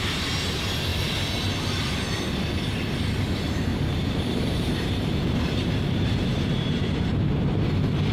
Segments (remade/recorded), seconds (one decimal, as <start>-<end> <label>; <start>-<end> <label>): 0.0-3.7 recorded; 3.7-7.1 remade; 7.1-8.1 recorded